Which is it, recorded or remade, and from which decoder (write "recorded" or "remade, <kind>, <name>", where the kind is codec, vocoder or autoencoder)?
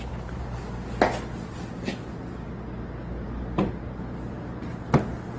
recorded